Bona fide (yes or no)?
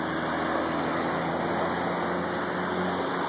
yes